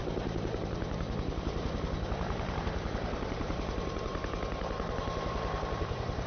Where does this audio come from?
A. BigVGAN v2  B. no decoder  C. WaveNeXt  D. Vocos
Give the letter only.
A